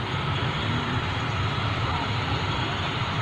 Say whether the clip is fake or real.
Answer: fake